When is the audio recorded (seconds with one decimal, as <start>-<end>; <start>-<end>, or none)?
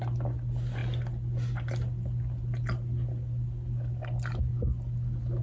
0.0-5.4